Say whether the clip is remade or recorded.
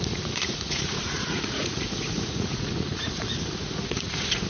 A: remade